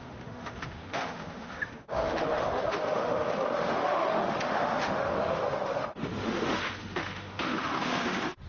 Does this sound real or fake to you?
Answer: fake